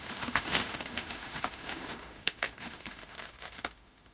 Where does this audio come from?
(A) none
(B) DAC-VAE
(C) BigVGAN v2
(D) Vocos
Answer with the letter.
B